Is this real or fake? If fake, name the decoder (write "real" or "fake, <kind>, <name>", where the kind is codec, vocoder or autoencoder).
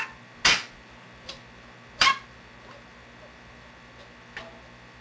real